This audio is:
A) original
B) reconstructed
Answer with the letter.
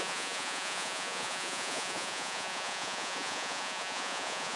B